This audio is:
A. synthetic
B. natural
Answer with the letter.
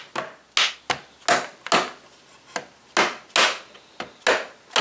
B